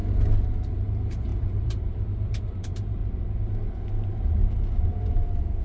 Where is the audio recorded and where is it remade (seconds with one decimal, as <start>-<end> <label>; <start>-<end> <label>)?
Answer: 0.0-0.7 recorded; 0.7-3.0 remade; 3.0-4.0 recorded; 4.0-4.4 remade; 4.4-5.6 recorded

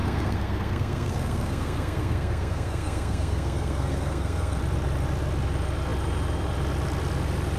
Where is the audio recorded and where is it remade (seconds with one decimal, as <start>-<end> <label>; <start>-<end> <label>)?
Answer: 0.0-4.6 remade; 4.6-7.6 recorded

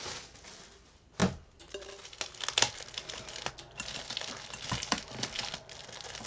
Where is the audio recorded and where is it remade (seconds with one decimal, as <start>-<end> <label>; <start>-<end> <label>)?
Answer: 0.0-6.3 recorded

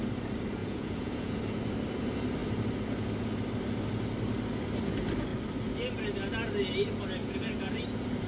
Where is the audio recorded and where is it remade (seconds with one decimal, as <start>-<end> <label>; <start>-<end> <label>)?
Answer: 0.0-0.6 recorded; 0.6-1.4 remade; 1.4-7.2 recorded; 7.2-7.8 remade; 7.8-8.3 recorded

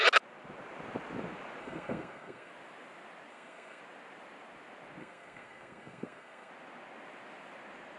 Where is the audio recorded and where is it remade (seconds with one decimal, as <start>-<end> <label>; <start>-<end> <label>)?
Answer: 0.0-1.6 recorded; 1.6-2.5 remade; 2.5-3.3 recorded; 3.3-3.8 remade; 3.8-5.0 recorded; 5.0-6.5 remade; 6.5-8.0 recorded

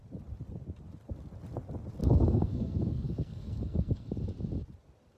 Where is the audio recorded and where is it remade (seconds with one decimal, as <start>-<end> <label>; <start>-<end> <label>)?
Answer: 0.0-2.0 recorded; 2.0-4.1 remade; 4.1-5.2 recorded

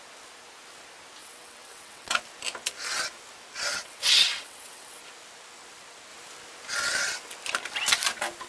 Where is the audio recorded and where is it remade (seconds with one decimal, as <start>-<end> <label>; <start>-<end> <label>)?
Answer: 0.0-1.2 recorded; 1.2-2.2 remade; 2.2-3.7 recorded; 3.7-5.0 remade; 5.0-8.5 recorded

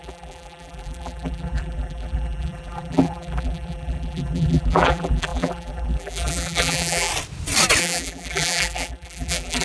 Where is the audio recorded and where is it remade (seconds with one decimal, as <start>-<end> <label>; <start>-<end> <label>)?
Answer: 0.0-7.1 remade; 7.1-7.8 recorded; 7.8-9.6 remade